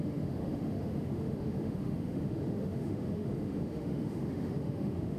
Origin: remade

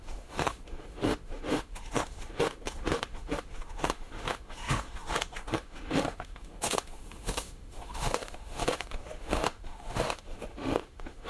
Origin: remade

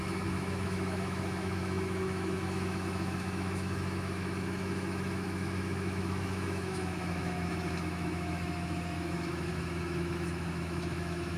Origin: remade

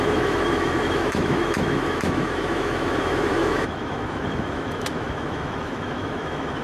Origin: remade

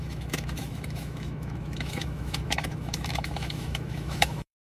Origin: remade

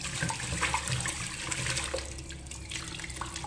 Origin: recorded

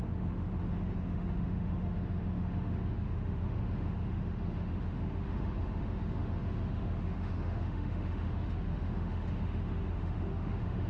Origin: remade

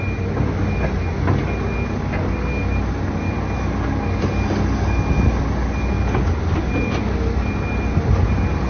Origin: recorded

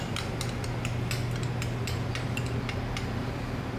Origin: recorded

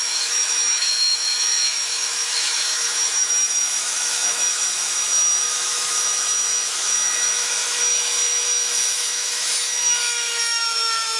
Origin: remade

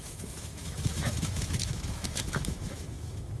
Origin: remade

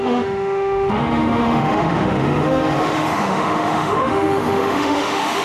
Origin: remade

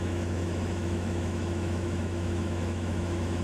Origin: remade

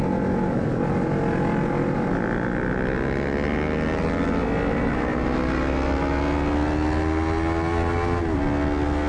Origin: recorded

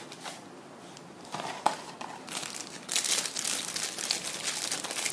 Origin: recorded